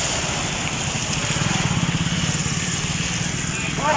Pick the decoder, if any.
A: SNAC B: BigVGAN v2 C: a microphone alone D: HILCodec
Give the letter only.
C